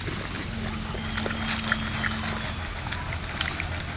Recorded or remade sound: recorded